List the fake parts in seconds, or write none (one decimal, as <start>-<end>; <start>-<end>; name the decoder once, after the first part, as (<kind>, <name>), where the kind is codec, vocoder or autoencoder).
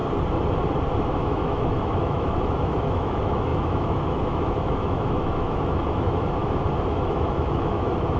1.0-6.4 (autoencoder, DAC-VAE); 6.9-8.2